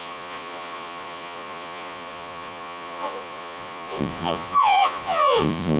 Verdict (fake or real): fake